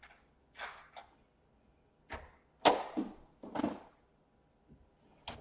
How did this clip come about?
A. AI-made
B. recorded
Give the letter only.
B